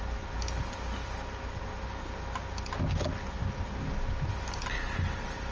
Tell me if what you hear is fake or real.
real